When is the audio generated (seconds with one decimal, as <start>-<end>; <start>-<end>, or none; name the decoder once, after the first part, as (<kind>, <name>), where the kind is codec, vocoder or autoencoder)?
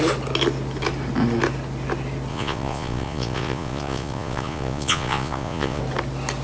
2.3-5.8 (vocoder, Vocos)